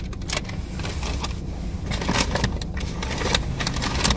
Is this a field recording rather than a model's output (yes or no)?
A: yes